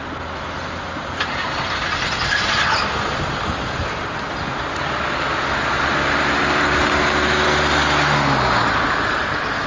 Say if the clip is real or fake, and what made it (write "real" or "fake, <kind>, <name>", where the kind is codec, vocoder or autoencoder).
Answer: real